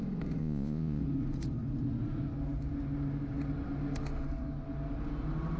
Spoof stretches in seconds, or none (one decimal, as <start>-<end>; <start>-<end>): 0.4-1.0